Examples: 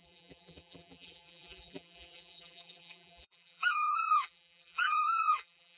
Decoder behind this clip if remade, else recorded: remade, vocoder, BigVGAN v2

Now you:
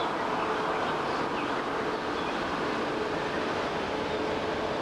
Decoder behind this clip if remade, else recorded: recorded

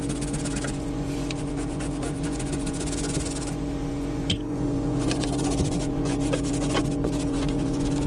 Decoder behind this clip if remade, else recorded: remade, vocoder, Vocos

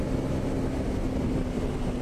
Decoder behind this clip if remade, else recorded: recorded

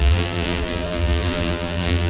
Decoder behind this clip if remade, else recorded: remade, vocoder, BigVGAN v2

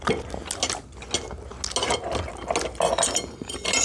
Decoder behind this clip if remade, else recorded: recorded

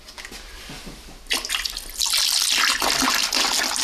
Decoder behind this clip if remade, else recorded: recorded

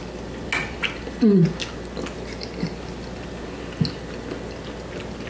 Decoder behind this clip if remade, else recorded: recorded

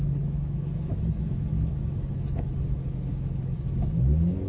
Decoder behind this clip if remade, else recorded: remade, autoencoder, DAC-VAE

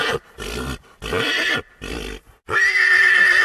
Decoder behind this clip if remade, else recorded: recorded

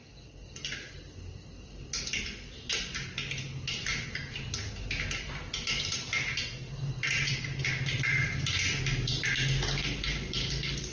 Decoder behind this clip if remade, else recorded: recorded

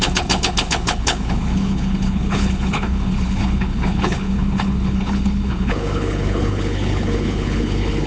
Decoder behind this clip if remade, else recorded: remade, codec, HILCodec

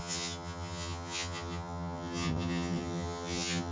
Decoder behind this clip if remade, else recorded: remade, vocoder, HiFi-GAN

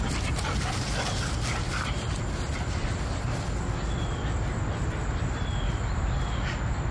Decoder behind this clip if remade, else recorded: recorded